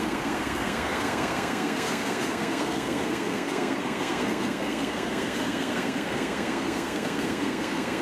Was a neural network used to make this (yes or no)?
yes